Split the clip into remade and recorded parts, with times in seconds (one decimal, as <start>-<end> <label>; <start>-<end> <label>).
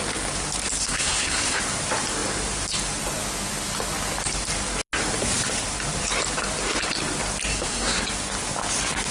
0.0-0.8 recorded; 0.8-1.6 remade; 1.6-7.5 recorded; 7.5-8.0 remade; 8.0-9.1 recorded